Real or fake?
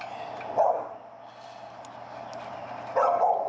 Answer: real